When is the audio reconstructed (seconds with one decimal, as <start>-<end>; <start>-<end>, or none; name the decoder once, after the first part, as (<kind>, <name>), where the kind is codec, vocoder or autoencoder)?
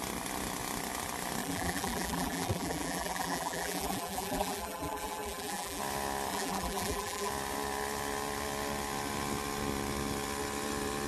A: 1.4-5.8 (vocoder, BigVGAN v2); 6.3-7.3